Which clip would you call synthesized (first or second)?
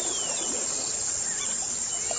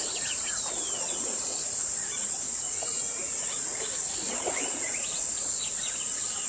second